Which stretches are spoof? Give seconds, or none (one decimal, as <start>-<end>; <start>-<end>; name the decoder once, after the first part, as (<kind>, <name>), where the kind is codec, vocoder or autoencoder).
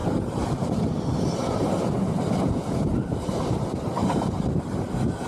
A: 0.0-0.7 (vocoder, BigVGAN v2); 4.0-4.8